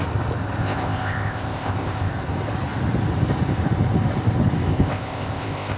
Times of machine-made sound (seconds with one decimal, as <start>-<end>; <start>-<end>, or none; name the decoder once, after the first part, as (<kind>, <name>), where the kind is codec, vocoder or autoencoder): 0.6-2.1 (codec, ZipCodec); 4.7-5.8